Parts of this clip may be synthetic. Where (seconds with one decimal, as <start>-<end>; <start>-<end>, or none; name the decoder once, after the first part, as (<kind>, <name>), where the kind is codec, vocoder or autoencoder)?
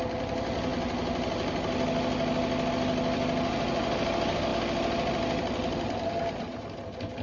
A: none